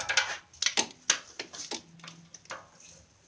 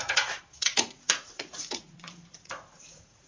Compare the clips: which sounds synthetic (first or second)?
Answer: second